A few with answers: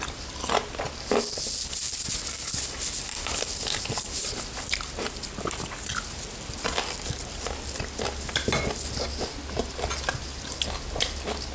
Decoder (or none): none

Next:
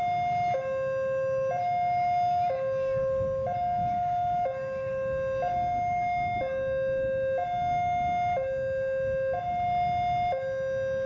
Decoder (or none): none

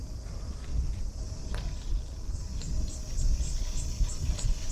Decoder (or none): none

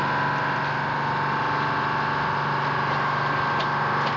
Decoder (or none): none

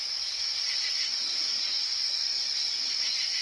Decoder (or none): none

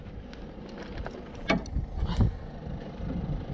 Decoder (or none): none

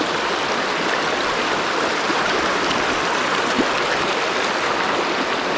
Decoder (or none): none